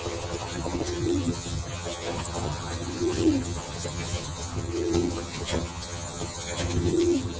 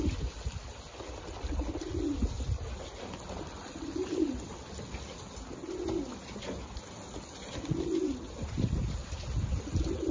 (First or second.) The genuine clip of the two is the second